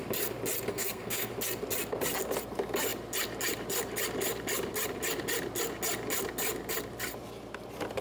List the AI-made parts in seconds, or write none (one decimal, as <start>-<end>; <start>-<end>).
0.7-1.3